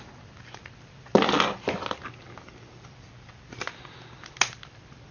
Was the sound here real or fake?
real